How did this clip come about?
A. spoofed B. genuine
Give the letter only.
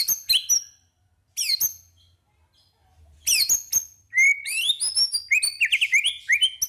B